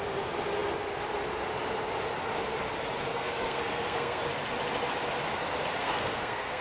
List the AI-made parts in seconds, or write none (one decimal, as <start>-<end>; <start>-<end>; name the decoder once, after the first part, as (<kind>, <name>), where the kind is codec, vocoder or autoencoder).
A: 3.1-4.2 (codec, SNAC); 5.8-6.6